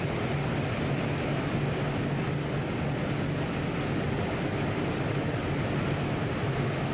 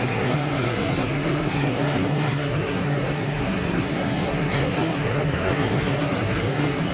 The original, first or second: first